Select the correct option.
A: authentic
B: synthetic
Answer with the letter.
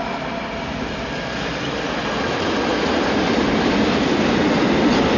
A